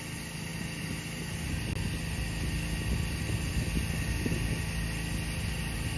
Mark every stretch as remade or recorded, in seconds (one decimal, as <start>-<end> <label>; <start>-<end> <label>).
0.0-6.0 recorded